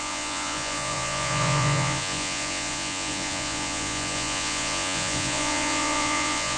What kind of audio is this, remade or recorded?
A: remade